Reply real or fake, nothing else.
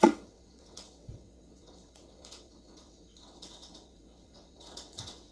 fake